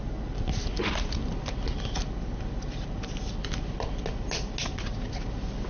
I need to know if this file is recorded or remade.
recorded